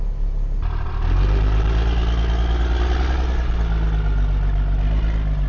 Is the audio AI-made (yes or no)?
no